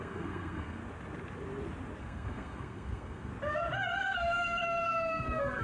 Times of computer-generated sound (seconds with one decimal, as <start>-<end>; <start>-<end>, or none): 0.0-0.8; 2.0-3.3; 4.0-5.6